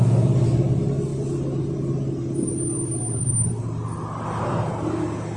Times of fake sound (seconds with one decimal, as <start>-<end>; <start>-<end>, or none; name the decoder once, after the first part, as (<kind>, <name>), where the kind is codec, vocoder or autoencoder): none